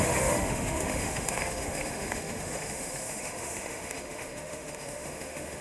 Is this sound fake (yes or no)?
yes